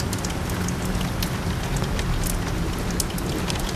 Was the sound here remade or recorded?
recorded